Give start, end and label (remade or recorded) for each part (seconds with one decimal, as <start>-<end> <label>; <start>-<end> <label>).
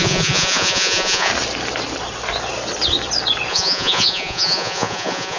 0.0-1.3 remade; 1.3-3.5 recorded; 3.5-5.4 remade